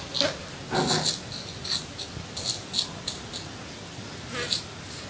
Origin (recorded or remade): recorded